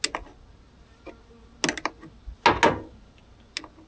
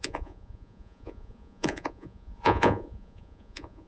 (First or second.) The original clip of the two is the first